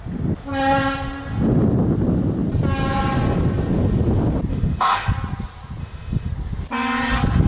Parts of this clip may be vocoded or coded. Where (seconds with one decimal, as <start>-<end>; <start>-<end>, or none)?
4.5-5.1; 5.8-6.3